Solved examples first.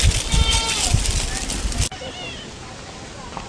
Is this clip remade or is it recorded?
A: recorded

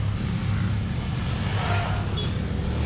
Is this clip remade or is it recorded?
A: recorded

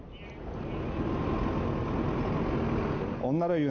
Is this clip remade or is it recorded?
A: recorded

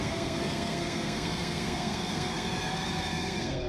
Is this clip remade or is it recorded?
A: remade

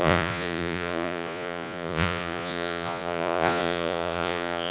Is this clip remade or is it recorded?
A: remade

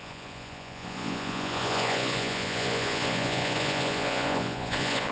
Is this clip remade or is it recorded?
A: remade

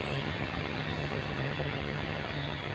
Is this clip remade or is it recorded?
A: remade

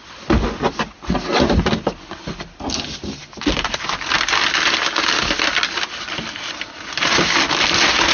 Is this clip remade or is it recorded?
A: recorded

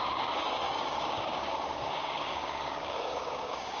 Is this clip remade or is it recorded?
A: remade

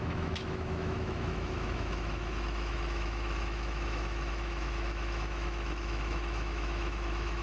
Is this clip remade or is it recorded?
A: remade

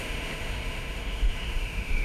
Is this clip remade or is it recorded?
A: remade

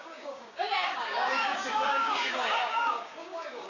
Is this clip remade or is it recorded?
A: remade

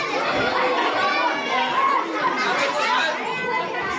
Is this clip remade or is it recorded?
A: recorded